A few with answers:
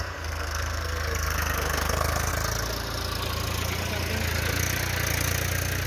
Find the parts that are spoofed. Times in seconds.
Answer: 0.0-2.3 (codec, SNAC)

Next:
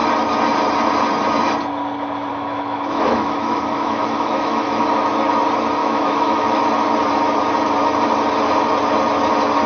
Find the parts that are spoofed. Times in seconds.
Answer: 2.3-4.8 (autoencoder, DAC-VAE); 5.8-6.6

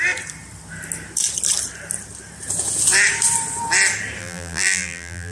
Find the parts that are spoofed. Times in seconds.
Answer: 4.2-5.3 (vocoder, BigVGAN v2)